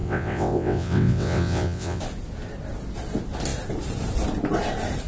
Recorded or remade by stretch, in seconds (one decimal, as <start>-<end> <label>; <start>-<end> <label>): 0.0-2.0 remade; 2.0-5.1 recorded